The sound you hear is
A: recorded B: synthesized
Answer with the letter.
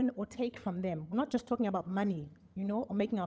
B